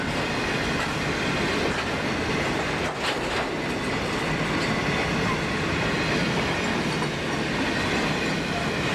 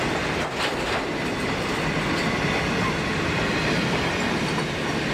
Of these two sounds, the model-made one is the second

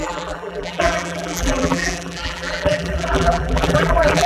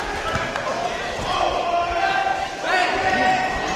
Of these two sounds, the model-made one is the first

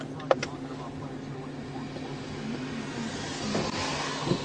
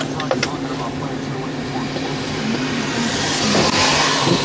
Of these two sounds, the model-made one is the second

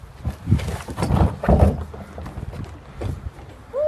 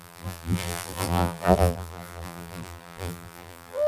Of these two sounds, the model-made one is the second